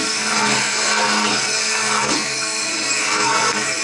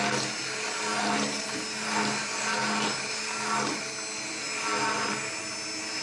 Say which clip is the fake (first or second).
first